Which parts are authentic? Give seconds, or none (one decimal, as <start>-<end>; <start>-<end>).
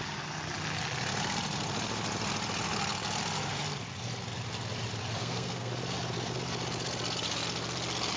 0.0-5.2; 5.7-8.2